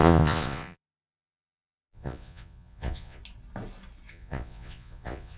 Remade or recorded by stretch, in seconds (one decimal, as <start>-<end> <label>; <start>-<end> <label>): 0.0-3.2 remade; 3.2-4.1 recorded; 4.1-5.4 remade